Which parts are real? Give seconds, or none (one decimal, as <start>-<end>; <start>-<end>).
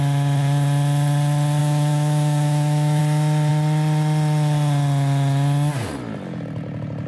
0.0-1.6; 3.0-7.1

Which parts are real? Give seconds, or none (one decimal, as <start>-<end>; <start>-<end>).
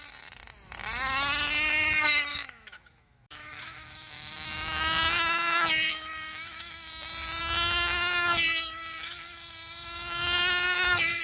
0.0-2.3; 6.9-7.4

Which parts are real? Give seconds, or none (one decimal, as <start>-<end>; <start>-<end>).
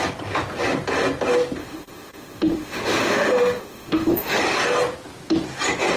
0.0-1.6; 4.4-6.0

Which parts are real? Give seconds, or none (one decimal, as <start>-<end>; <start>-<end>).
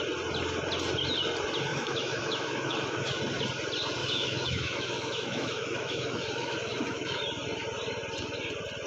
0.0-1.7; 3.2-4.0; 7.2-8.9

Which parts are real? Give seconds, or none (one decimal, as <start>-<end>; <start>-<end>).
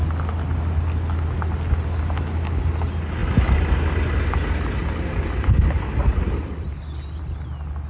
0.0-7.9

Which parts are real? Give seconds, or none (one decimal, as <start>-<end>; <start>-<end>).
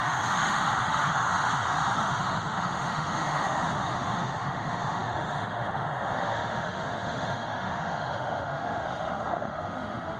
none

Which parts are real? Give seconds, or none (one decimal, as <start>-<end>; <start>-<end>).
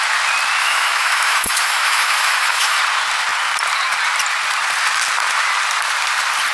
0.0-0.6; 2.8-6.5